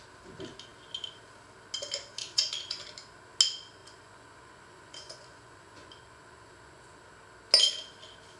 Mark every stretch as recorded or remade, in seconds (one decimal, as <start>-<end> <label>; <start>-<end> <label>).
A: 0.0-2.2 recorded; 2.2-2.8 remade; 2.8-3.8 recorded; 3.8-7.0 remade; 7.0-8.4 recorded